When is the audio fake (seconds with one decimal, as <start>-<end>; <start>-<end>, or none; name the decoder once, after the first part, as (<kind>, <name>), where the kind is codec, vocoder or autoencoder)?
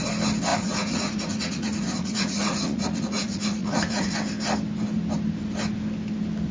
0.5-4.1 (vocoder, Vocos)